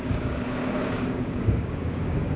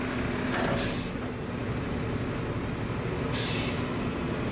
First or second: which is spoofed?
first